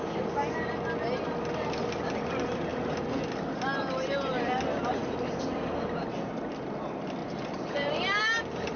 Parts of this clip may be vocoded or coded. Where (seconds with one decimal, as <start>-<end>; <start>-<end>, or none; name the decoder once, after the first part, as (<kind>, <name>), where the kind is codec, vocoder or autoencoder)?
none